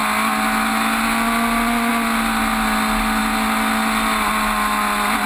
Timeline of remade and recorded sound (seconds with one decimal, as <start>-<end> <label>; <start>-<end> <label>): 0.0-5.3 recorded